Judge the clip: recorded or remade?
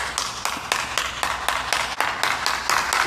recorded